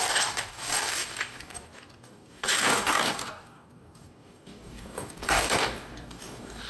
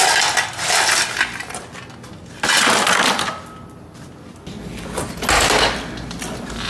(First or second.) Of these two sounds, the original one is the second